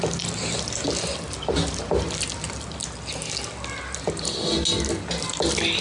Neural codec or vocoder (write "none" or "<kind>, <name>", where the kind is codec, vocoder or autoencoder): none